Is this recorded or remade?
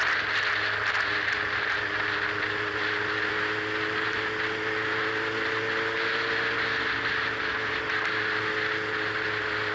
recorded